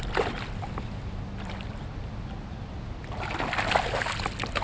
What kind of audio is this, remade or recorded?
recorded